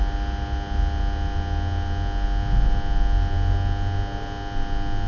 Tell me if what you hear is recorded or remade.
recorded